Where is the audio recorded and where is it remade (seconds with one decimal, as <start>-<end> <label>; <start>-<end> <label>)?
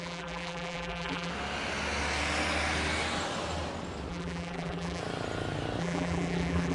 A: 0.0-1.3 remade; 1.3-4.1 recorded; 4.1-5.0 remade; 5.0-5.8 recorded; 5.8-6.7 remade